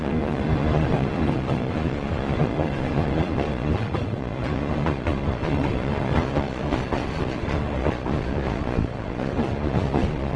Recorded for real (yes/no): no